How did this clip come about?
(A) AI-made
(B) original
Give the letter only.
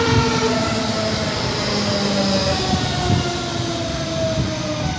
B